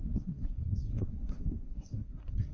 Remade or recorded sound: remade